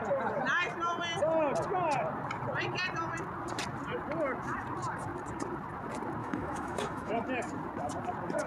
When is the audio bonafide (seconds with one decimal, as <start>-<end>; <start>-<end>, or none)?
0.0-6.2; 7.1-8.5